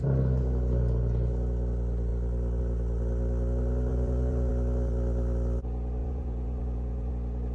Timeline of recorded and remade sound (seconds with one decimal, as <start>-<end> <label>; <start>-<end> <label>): 0.0-3.9 recorded; 3.9-4.5 remade; 4.5-6.0 recorded; 6.0-7.1 remade; 7.1-7.5 recorded